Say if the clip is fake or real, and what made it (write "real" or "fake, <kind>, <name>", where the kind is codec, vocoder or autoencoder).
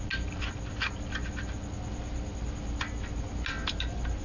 real